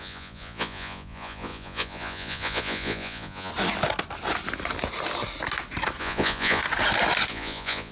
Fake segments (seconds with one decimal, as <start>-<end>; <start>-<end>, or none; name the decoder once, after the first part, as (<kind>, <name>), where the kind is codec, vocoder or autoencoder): 0.0-3.5 (vocoder, Vocos); 6.0-6.6; 7.3-7.9